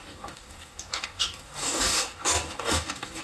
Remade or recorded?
remade